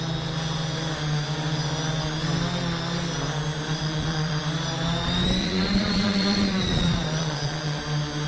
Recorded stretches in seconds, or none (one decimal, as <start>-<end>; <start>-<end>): 0.0-3.8; 4.4-5.4; 7.8-8.3